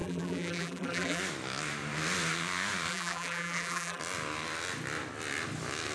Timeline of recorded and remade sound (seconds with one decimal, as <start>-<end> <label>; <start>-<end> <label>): 0.0-1.2 remade; 1.2-2.9 recorded; 2.9-4.0 remade; 4.0-5.9 recorded